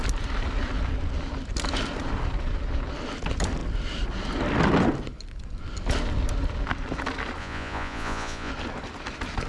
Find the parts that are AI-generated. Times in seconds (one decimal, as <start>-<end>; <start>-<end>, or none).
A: 7.4-8.5